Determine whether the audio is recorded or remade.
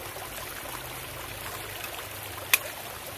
recorded